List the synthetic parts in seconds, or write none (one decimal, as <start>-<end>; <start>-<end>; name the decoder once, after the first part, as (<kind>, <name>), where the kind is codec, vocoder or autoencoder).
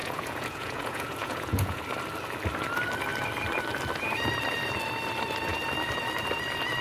0.0-1.8 (vocoder, Vocos)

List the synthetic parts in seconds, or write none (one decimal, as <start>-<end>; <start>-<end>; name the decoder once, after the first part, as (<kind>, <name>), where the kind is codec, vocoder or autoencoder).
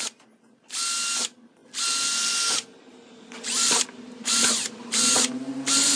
2.9-5.5 (vocoder, BigVGAN v2)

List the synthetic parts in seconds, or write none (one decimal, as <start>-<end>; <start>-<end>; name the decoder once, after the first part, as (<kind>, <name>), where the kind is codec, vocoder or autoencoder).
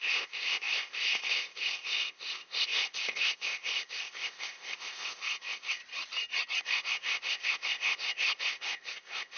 0.0-5.8 (codec, ZipCodec); 6.6-9.4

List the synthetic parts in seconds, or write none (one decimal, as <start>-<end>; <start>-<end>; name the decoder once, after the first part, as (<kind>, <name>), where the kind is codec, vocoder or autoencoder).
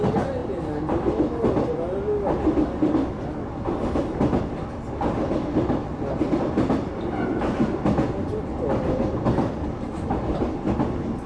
none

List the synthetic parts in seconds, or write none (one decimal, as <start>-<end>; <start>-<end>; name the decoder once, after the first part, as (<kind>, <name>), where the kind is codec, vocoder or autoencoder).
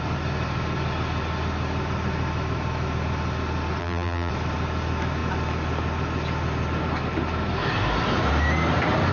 3.8-4.3 (vocoder, BigVGAN v2)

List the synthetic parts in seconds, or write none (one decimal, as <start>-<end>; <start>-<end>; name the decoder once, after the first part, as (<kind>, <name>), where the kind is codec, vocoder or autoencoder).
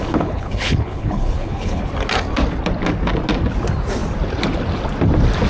0.0-1.8 (codec, HILCodec)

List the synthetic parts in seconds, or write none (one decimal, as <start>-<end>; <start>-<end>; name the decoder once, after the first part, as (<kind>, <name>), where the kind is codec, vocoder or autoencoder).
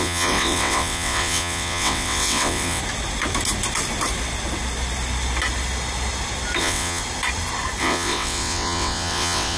0.0-2.8 (vocoder, WaveNeXt); 6.6-7.0; 7.8-9.6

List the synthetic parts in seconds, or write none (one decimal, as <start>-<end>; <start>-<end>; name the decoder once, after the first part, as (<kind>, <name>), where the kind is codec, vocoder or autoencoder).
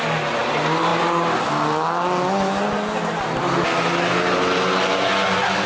none